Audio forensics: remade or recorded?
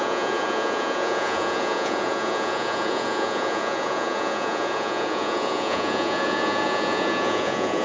remade